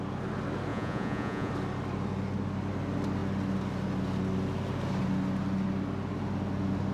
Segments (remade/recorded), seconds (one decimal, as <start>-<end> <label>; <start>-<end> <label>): 0.0-0.7 recorded; 0.7-1.5 remade; 1.5-6.9 recorded

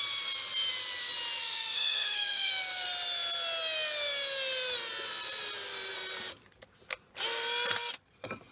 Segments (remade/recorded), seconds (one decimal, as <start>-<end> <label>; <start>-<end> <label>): 0.0-1.4 recorded; 1.4-2.5 remade; 2.5-8.5 recorded

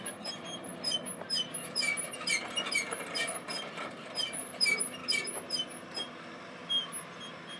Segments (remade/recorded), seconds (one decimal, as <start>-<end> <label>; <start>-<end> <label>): 0.0-0.7 remade; 0.7-2.5 recorded; 2.5-5.0 remade; 5.0-7.6 recorded